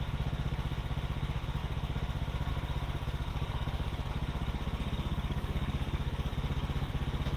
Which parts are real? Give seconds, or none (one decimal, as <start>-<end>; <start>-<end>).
0.0-3.3; 4.1-4.8; 6.3-7.4